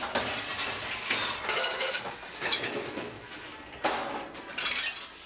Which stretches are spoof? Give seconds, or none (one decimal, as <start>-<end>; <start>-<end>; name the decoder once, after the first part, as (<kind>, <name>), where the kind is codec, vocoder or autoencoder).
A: 1.5-3.3 (autoencoder, DAC-VAE)